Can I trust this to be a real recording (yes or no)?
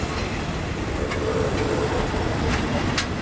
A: yes